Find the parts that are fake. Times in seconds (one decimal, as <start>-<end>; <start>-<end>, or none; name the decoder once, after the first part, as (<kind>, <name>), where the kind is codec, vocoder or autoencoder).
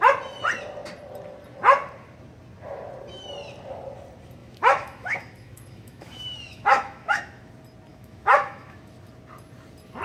4.4-7.5 (autoencoder, DAC-VAE); 7.9-8.8